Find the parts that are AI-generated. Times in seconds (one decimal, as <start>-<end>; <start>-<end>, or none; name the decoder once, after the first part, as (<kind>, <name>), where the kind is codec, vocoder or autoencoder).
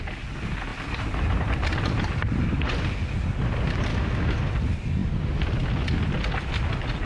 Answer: 3.9-4.5 (autoencoder, DAC-VAE)